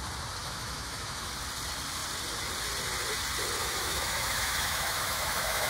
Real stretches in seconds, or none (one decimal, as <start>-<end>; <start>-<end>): 0.0-0.4; 1.3-3.6